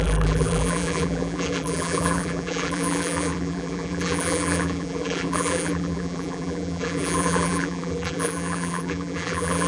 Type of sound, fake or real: fake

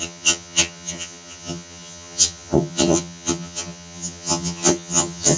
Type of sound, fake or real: fake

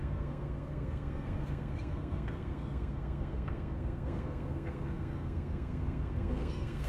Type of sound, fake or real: fake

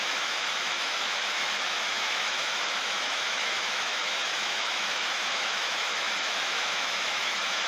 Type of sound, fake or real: fake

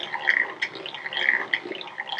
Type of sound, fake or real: real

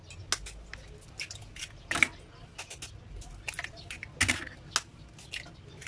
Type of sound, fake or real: real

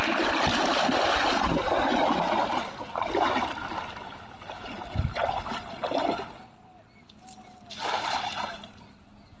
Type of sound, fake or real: real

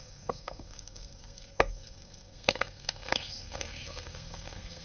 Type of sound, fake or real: fake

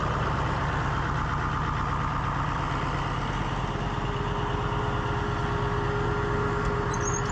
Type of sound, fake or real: real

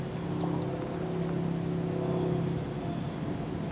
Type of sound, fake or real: real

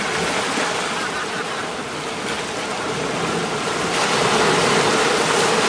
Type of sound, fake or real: real